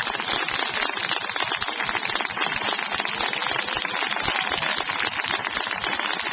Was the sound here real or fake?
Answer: real